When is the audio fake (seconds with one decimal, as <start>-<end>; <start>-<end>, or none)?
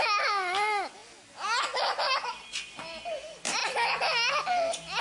none